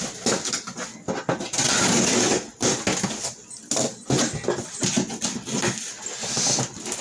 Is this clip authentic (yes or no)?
yes